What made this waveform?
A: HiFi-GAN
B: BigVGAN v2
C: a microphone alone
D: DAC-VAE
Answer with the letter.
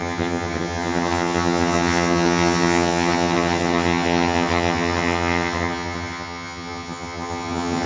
A